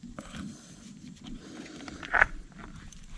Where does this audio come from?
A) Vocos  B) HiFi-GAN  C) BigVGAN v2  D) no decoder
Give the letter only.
C